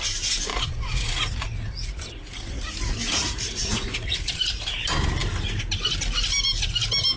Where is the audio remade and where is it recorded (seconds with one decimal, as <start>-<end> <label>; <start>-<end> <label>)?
0.0-0.5 recorded; 0.5-2.6 remade; 2.6-3.1 recorded; 3.1-4.4 remade; 4.4-7.2 recorded